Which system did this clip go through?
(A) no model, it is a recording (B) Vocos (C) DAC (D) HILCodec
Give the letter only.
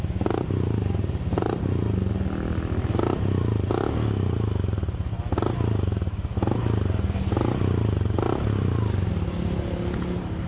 A